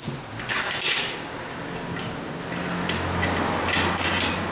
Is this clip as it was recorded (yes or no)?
yes